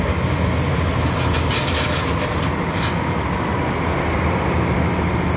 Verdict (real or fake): real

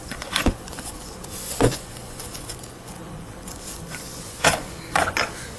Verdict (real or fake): fake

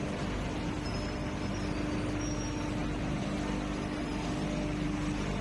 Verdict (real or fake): real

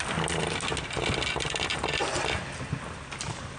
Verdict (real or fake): real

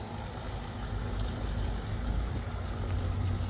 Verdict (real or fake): real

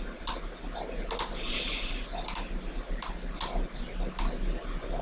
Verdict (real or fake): real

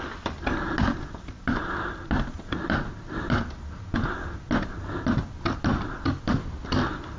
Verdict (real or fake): real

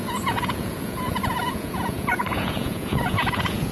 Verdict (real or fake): fake